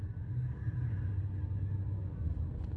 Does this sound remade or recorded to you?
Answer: recorded